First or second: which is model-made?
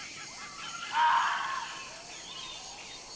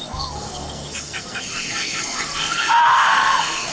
second